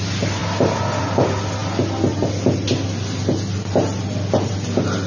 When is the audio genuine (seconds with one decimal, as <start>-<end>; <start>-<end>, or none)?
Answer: 0.0-5.1